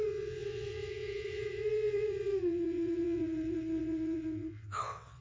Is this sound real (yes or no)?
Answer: no